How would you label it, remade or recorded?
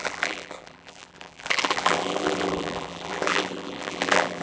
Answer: remade